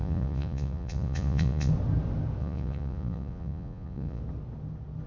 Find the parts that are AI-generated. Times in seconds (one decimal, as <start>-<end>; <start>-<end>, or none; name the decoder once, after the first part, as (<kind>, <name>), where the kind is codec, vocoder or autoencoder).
0.0-1.7 (vocoder, Vocos); 2.4-4.2

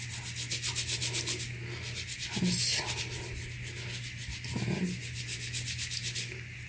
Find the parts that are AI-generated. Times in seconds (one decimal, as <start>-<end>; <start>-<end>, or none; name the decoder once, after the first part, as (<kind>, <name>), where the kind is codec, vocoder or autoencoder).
none

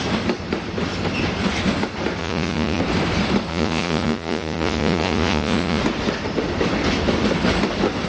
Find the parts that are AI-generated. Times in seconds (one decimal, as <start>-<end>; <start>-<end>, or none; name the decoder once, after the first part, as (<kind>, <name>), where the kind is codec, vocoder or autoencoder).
2.2-2.8 (vocoder, Vocos); 3.5-5.8

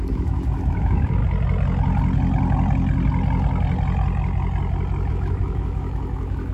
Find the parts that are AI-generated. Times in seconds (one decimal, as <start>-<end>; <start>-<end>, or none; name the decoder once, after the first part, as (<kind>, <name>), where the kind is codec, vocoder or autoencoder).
0.0-1.2 (autoencoder, DAC-VAE); 5.1-6.5

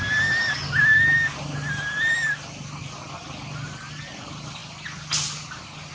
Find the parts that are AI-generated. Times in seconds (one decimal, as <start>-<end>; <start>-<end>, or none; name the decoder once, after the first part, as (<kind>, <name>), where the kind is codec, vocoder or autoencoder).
none

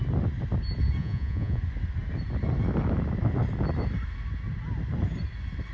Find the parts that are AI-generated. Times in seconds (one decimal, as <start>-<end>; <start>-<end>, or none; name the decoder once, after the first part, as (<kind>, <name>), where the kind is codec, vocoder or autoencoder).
1.0-1.6 (vocoder, Vocos)

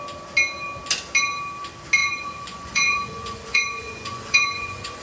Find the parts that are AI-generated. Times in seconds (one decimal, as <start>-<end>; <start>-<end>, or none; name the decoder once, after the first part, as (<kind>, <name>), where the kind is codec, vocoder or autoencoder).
2.0-5.0 (vocoder, Vocos)